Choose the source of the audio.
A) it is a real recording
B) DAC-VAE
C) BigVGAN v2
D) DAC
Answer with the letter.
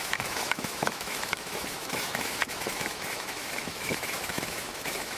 B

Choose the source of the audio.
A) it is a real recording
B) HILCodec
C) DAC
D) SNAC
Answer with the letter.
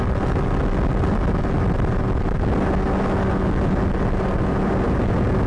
A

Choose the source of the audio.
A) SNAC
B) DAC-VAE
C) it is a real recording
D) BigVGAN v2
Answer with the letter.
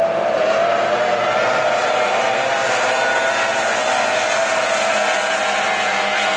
C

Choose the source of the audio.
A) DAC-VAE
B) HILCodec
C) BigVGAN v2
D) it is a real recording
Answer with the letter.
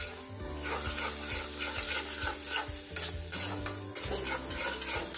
D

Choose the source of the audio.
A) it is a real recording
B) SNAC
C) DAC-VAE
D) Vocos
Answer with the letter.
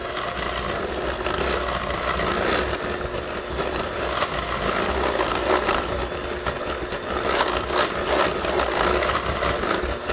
A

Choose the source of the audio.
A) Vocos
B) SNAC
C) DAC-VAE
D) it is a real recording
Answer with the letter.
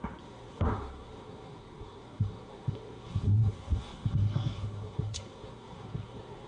B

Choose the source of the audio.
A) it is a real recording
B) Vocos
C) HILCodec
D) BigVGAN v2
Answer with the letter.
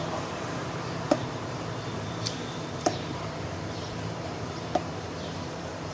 D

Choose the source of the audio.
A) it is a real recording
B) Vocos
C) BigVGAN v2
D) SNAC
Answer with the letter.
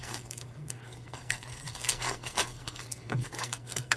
D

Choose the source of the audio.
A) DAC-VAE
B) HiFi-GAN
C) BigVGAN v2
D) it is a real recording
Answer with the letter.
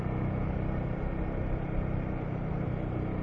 C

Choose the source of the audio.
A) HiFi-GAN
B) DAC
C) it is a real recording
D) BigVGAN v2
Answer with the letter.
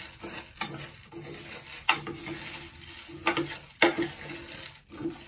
C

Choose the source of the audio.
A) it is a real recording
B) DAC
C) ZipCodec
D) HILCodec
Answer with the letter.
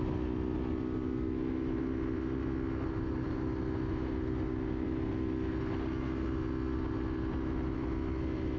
A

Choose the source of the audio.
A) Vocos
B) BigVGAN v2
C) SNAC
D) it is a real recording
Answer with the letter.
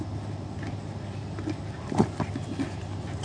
D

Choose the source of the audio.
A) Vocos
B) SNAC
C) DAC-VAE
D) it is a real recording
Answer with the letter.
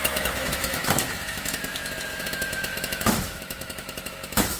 C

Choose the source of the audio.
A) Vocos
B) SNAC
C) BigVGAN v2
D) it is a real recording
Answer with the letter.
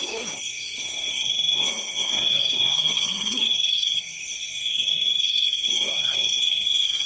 B